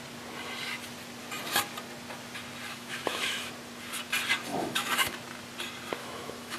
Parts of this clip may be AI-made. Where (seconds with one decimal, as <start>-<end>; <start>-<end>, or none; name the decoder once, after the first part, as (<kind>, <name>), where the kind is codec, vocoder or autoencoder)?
2.7-3.5 (autoencoder, DAC-VAE); 4.5-5.1; 6.0-6.6